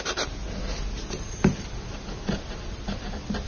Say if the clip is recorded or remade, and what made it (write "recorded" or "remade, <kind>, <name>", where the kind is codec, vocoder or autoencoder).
recorded